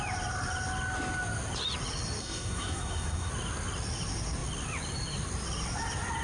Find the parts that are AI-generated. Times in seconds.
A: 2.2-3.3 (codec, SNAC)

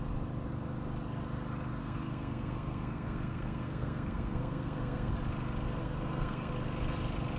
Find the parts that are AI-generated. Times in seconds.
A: 1.8-5.1 (codec, SNAC); 5.8-6.5

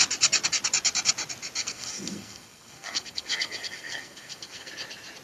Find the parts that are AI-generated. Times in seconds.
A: 1.6-4.7 (codec, SNAC)

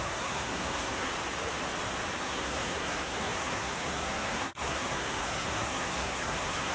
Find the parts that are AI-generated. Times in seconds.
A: 0.0-1.1 (codec, SNAC); 2.2-6.7